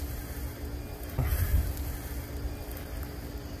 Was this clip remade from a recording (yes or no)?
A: no